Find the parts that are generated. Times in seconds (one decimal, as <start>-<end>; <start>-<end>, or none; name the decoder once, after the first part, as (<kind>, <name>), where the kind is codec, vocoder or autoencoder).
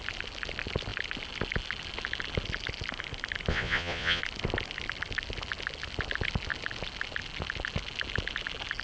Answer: 3.5-4.2 (vocoder, Vocos)